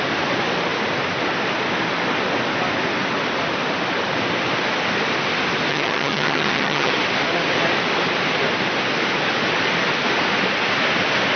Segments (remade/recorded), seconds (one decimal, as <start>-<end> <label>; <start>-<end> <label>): 0.0-5.7 recorded; 5.7-6.9 remade; 6.9-11.4 recorded